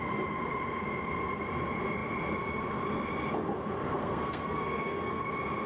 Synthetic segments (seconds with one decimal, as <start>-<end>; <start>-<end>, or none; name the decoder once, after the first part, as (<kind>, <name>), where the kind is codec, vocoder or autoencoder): 4.0-5.2 (codec, SNAC)